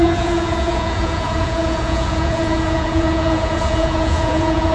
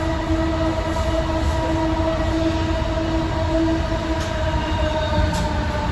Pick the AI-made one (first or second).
first